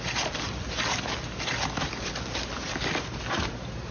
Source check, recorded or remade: recorded